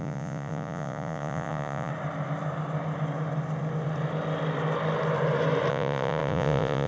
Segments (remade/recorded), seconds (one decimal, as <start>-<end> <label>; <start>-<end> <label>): 0.0-1.9 remade; 1.9-5.7 recorded; 5.7-6.9 remade